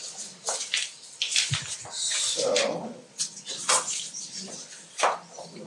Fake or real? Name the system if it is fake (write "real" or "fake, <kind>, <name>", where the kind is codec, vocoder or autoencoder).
real